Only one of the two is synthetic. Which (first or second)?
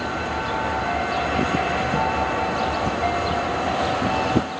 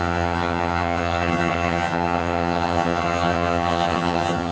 second